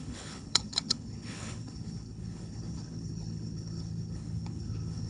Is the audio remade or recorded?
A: remade